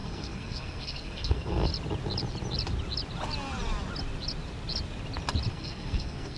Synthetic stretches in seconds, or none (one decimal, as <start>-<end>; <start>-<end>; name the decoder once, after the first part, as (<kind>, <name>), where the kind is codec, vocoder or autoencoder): 0.0-1.7 (codec, SNAC); 5.5-6.4